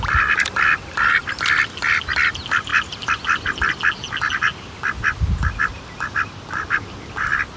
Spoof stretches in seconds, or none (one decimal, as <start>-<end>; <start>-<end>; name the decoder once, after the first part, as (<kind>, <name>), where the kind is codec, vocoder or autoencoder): none